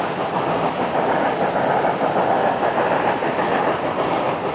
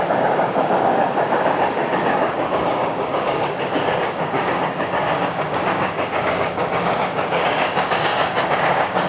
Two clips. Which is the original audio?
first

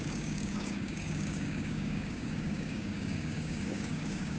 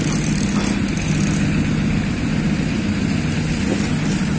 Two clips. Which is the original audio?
second